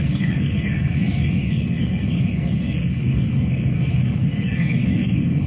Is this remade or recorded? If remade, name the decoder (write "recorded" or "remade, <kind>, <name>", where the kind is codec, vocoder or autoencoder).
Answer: remade, codec, SNAC